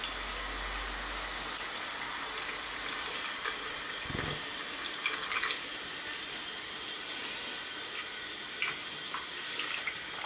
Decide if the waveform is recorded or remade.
recorded